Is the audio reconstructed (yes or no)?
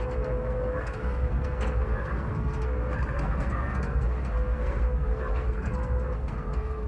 yes